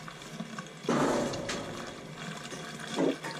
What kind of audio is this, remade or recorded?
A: recorded